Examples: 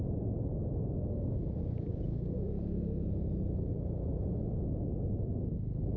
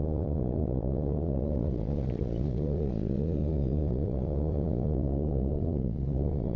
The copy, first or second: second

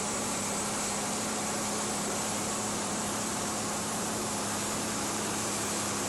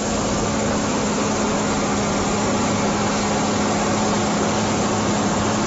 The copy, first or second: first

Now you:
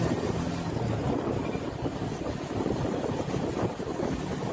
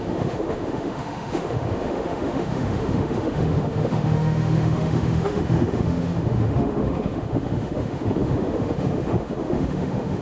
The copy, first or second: second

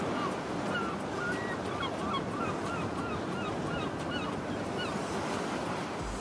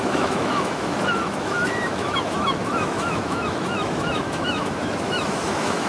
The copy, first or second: second